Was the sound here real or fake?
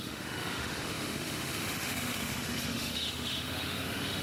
fake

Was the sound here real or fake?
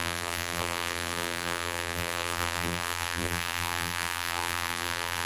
fake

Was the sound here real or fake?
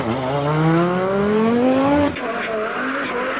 real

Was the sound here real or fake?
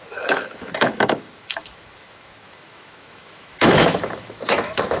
fake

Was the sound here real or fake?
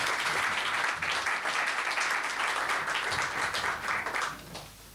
real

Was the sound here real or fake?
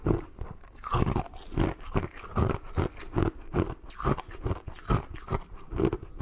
real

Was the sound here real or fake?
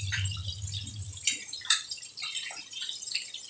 fake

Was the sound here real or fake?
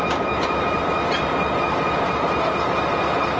real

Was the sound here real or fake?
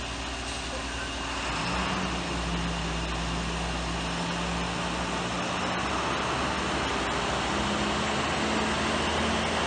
real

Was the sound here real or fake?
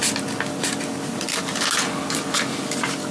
real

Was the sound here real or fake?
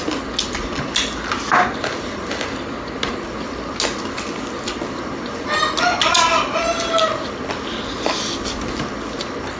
real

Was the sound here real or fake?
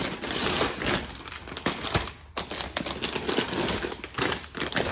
real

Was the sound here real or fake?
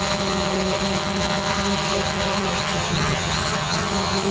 fake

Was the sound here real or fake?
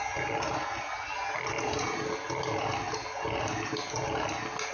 real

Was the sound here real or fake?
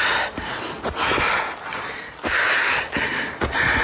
real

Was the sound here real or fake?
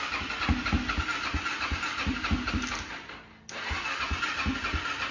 real